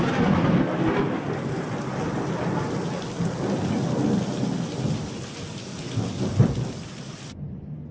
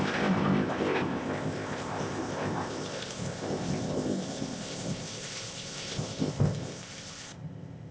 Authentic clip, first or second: first